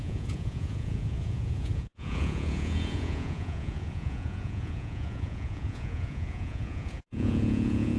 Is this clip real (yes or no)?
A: no